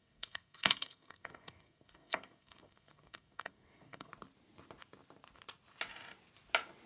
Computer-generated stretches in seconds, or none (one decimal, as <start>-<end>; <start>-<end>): 0.0-4.1